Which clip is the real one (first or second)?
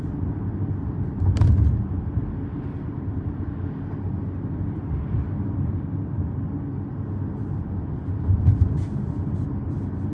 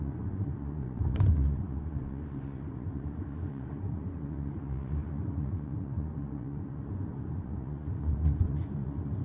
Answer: first